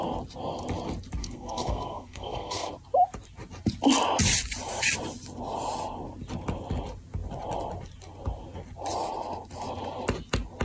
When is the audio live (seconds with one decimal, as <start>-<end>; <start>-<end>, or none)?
0.0-1.2; 2.7-10.6